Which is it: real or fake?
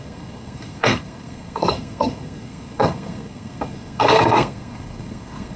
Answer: fake